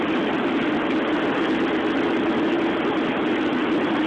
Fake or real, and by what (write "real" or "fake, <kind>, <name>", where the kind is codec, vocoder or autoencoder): real